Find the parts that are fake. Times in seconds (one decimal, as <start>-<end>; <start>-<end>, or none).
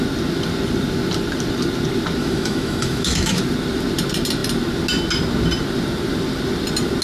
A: 2.2-3.4